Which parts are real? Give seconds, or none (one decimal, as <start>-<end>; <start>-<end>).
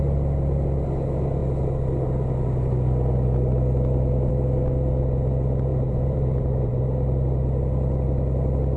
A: 0.0-5.7; 6.8-8.8